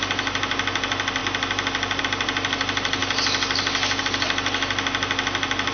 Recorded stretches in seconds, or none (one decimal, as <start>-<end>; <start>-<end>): 0.0-5.7